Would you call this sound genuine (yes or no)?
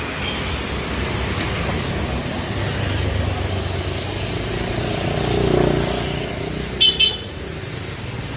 yes